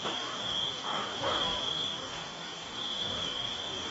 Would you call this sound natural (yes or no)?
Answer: no